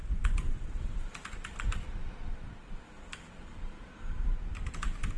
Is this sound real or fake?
fake